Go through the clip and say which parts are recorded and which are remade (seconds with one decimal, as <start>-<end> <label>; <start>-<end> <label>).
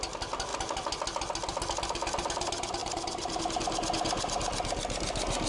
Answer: 0.0-2.8 recorded; 2.8-3.4 remade; 3.4-5.5 recorded